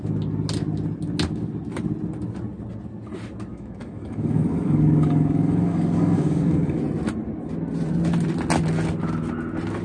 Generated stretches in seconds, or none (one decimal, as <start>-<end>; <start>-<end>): 3.5-6.8